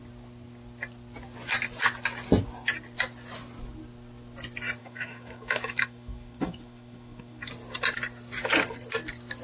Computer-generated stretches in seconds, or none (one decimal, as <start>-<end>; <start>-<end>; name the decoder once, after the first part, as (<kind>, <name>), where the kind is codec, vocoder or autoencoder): 4.8-7.5 (autoencoder, DAC-VAE)